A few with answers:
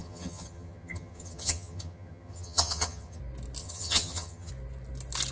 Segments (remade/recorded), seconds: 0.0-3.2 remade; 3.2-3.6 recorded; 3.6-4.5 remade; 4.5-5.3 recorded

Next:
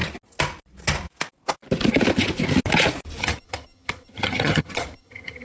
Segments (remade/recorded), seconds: 0.0-3.2 recorded; 3.2-5.4 remade

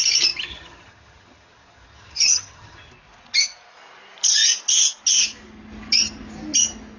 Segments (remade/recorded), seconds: 0.0-0.5 recorded; 0.5-2.9 remade; 2.9-7.0 recorded